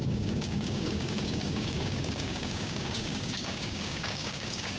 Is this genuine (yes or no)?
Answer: no